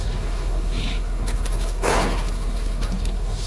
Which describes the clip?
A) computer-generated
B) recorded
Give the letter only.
A